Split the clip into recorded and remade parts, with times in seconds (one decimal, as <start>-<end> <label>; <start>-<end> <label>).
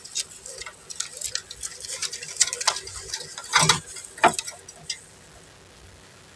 0.0-6.4 recorded